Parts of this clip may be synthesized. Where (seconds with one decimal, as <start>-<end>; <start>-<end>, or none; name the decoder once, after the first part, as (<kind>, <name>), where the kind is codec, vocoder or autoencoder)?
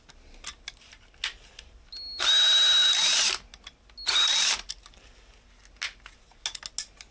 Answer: none